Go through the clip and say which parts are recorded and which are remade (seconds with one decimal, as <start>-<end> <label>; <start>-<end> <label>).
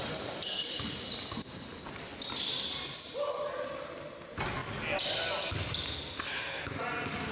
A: 0.0-7.3 recorded